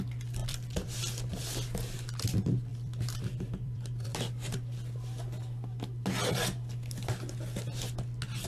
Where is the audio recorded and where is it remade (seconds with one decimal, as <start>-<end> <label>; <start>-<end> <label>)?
0.0-0.4 recorded; 0.4-1.0 remade; 1.0-2.7 recorded; 2.7-4.2 remade; 4.2-8.5 recorded